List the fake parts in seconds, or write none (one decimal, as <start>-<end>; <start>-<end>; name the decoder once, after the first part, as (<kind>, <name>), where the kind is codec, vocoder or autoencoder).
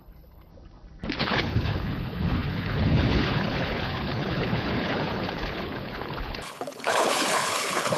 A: 0.0-0.5 (codec, HILCodec); 1.2-8.0